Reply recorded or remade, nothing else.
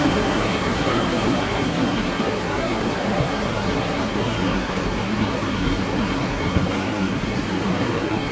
remade